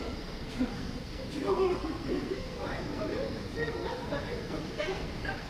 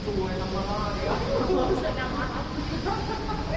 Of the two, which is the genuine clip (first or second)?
second